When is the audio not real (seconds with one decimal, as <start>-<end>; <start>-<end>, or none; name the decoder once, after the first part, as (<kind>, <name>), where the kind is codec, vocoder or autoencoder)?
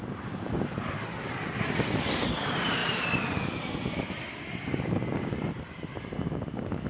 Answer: 0.0-2.8 (vocoder, BigVGAN v2); 4.1-6.9